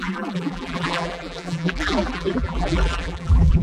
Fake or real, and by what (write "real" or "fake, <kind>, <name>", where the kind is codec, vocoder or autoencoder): fake, vocoder, BigVGAN v2